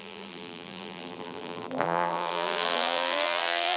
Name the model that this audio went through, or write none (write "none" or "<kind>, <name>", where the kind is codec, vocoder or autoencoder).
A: vocoder, BigVGAN v2